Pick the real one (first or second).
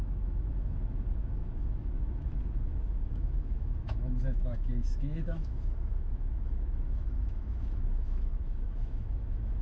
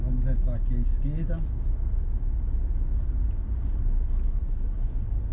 second